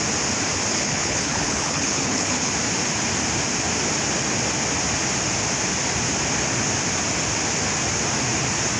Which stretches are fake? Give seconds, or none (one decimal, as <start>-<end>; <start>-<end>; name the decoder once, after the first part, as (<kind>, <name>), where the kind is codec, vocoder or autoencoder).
0.7-2.5 (codec, HILCodec)